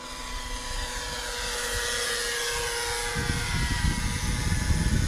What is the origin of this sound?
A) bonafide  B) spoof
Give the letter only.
A